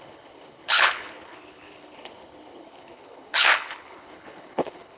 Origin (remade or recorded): remade